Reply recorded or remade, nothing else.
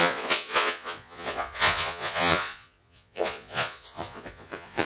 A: remade